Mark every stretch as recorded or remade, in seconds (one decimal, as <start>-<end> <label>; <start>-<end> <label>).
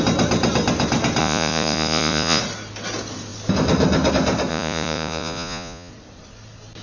0.0-1.2 recorded; 1.2-2.4 remade; 2.4-4.5 recorded; 4.5-5.9 remade; 5.9-6.8 recorded